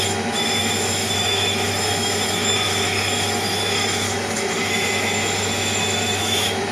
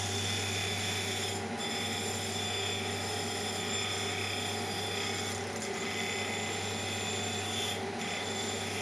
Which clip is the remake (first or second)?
first